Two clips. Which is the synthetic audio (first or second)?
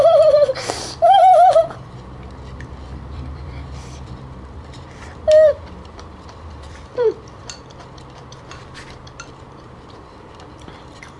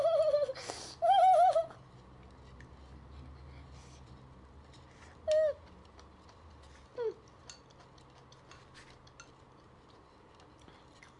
first